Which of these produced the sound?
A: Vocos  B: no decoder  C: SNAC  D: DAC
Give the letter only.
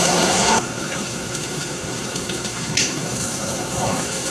C